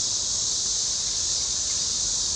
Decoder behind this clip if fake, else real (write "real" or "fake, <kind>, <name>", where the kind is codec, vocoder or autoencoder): real